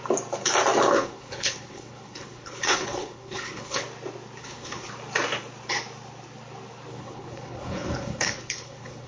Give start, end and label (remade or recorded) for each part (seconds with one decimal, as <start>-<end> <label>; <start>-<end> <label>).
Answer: 0.0-0.9 recorded; 0.9-3.8 remade; 3.8-4.4 recorded; 4.4-4.9 remade; 4.9-6.9 recorded; 6.9-9.1 remade

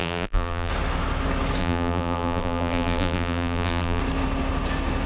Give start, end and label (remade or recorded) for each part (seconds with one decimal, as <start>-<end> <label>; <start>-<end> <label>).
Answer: 0.0-0.7 remade; 0.7-1.6 recorded; 1.6-4.0 remade; 4.0-5.1 recorded

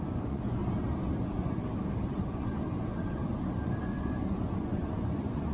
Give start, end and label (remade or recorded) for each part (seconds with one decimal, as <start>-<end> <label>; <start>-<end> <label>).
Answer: 0.0-0.6 remade; 0.6-1.2 recorded; 1.2-1.6 remade; 1.6-2.2 recorded; 2.2-3.2 remade; 3.2-3.8 recorded; 3.8-5.5 remade

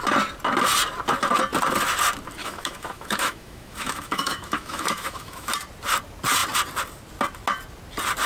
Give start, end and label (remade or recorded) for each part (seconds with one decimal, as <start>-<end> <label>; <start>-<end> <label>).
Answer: 0.0-2.4 recorded; 2.4-5.5 remade; 5.5-8.3 recorded

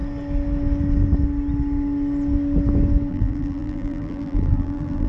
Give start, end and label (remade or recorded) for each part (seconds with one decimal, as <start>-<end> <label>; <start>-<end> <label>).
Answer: 0.0-3.1 recorded; 3.1-5.1 remade

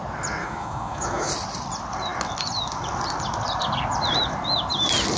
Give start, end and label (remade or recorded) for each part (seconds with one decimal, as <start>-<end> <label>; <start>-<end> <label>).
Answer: 0.0-0.4 recorded; 0.4-1.3 remade; 1.3-5.2 recorded

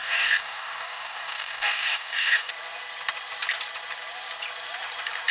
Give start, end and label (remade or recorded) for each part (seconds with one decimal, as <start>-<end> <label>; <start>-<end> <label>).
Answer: 0.0-2.5 remade; 2.5-5.3 recorded